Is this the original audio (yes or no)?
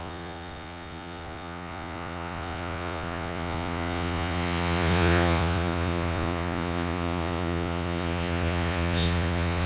no